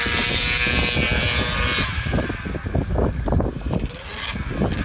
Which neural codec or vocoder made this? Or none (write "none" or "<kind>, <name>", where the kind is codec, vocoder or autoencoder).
none